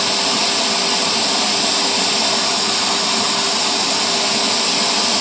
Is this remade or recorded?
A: recorded